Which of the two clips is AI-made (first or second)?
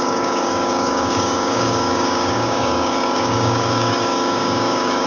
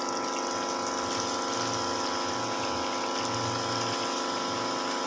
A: first